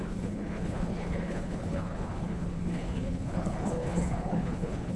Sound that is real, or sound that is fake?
fake